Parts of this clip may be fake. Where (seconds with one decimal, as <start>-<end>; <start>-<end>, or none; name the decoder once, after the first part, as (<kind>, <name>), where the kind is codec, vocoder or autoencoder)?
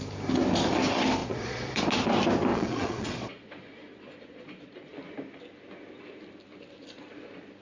1.2-1.8 (vocoder, Vocos); 2.5-4.9